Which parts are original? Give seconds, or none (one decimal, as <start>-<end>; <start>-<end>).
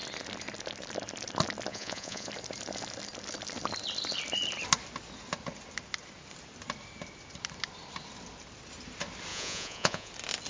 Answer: 0.0-1.7; 2.3-9.3; 10.1-10.5